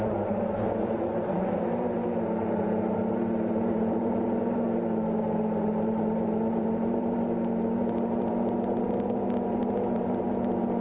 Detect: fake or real fake